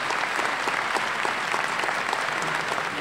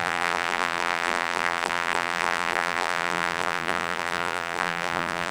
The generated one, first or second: second